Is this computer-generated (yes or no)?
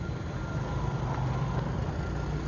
no